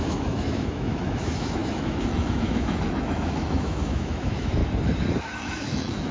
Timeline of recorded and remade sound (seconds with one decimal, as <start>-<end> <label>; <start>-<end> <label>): 0.0-4.6 remade; 4.6-5.2 recorded; 5.2-6.1 remade